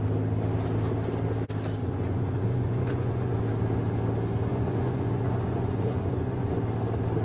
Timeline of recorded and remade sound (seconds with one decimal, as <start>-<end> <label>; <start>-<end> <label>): 0.0-1.8 recorded; 1.8-3.3 remade; 3.3-4.5 recorded; 4.5-6.5 remade; 6.5-7.2 recorded

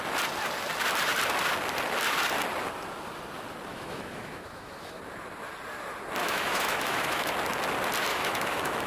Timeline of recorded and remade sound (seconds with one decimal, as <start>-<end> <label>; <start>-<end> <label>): 0.0-3.7 recorded; 3.7-5.0 remade; 5.0-6.2 recorded; 6.2-7.3 remade; 7.3-8.1 recorded; 8.1-8.9 remade

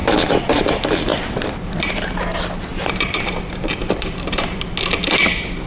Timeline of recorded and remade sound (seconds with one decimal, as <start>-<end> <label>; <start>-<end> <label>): 0.0-0.6 remade; 0.6-1.1 recorded; 1.1-2.2 remade; 2.2-2.7 recorded; 2.7-4.6 remade; 4.6-5.7 recorded

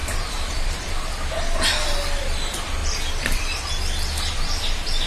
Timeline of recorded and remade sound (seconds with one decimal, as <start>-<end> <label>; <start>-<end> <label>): 0.0-0.9 remade; 0.9-2.8 recorded; 2.8-3.4 remade; 3.4-5.1 recorded

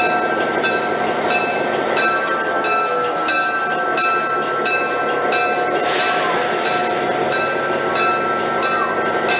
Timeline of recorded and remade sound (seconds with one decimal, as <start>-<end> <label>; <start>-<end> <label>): 0.0-9.4 recorded

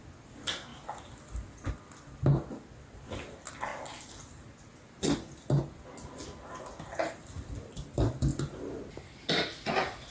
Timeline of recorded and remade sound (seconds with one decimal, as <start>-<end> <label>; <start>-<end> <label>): 0.0-10.1 recorded

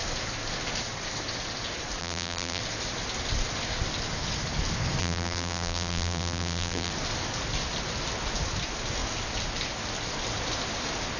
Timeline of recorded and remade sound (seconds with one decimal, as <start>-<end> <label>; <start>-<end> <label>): 0.0-2.0 recorded; 2.0-2.6 remade; 2.6-5.0 recorded; 5.0-6.9 remade; 6.9-11.2 recorded